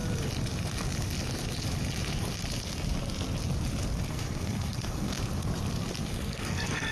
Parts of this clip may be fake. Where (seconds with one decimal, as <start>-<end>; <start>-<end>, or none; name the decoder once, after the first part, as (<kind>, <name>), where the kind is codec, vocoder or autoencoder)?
4.1-5.1 (codec, SNAC); 6.1-6.9